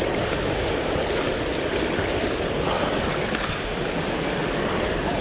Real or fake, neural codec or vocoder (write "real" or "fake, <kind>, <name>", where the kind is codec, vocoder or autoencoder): real